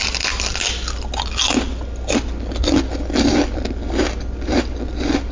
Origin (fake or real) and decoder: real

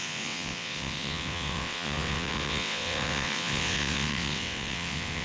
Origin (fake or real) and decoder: fake, vocoder, WaveNeXt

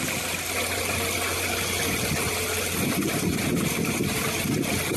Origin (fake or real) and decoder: real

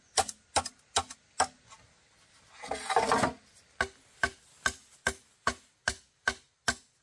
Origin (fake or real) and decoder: real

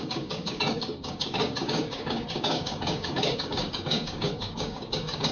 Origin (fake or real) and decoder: fake, codec, DAC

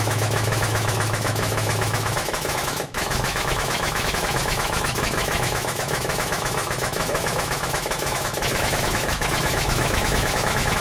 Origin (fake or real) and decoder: fake, autoencoder, DAC-VAE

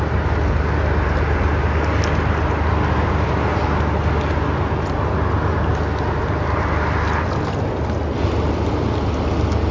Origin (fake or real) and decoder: real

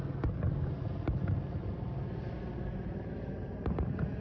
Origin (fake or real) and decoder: real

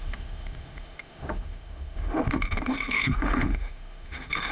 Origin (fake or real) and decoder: fake, autoencoder, DAC-VAE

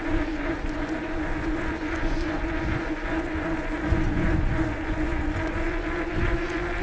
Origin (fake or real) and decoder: fake, vocoder, Vocos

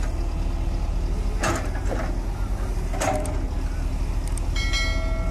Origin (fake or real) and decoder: real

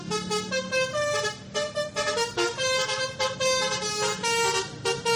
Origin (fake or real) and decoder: real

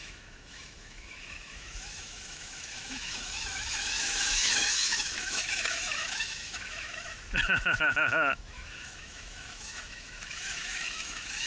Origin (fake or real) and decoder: fake, autoencoder, DAC-VAE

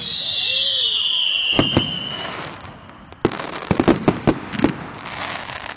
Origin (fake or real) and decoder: real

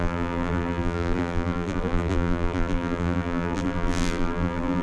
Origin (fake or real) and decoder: fake, vocoder, BigVGAN v2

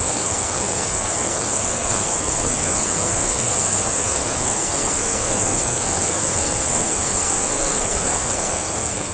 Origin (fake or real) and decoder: fake, codec, SNAC